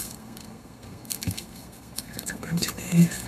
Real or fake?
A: fake